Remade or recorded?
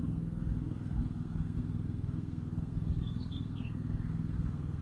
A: remade